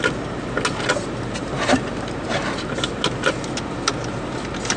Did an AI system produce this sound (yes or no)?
no